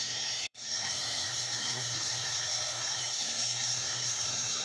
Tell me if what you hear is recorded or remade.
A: remade